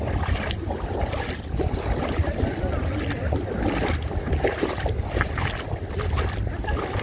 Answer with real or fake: real